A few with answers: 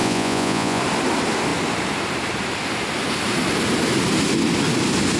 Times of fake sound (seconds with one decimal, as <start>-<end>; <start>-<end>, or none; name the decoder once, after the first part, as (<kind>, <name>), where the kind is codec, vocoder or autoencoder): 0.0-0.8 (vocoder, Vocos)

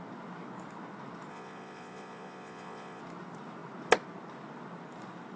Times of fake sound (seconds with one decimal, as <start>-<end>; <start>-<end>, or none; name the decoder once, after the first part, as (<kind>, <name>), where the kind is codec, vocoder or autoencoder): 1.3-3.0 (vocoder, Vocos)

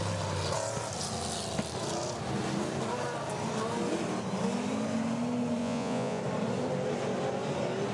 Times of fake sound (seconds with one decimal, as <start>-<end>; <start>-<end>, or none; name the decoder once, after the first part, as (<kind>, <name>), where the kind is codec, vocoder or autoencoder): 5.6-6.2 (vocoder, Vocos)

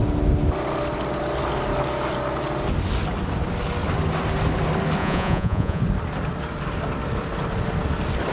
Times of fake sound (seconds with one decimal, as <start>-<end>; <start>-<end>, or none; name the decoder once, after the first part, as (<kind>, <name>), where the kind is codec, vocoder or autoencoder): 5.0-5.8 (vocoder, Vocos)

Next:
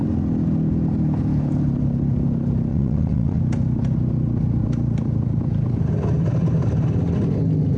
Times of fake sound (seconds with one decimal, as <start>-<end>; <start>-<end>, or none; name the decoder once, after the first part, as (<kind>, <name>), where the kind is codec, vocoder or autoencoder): 2.7-3.4 (vocoder, Vocos)

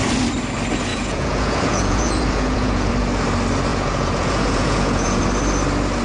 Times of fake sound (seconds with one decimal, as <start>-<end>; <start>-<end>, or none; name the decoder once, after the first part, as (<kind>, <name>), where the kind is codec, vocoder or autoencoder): 0.9-2.9 (vocoder, Vocos); 3.7-5.2

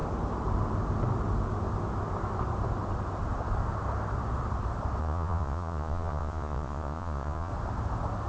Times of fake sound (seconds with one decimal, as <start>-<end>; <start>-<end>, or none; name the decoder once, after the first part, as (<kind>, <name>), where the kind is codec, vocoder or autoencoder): 5.0-7.5 (vocoder, Vocos)

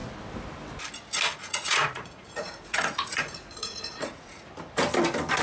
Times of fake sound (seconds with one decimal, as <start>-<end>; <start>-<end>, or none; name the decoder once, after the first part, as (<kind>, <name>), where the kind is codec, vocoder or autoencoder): 1.4-4.5 (vocoder, Vocos)